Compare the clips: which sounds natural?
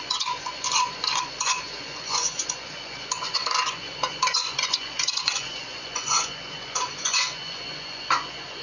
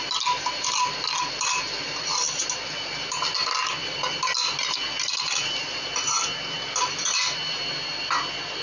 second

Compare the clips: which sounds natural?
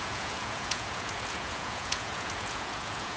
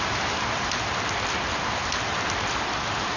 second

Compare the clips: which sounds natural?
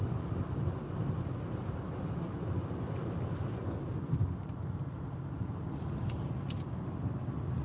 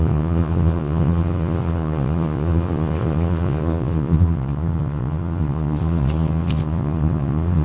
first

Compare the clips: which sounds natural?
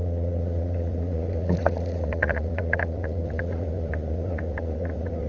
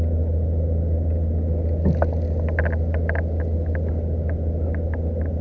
second